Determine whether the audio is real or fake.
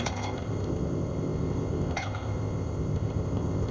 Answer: fake